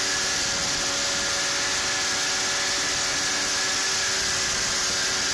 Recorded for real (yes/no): yes